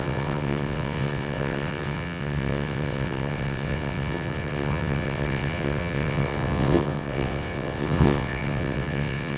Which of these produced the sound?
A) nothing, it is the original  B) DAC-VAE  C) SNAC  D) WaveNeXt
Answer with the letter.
D